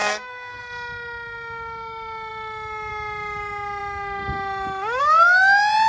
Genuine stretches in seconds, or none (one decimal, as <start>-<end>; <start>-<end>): 0.6-5.9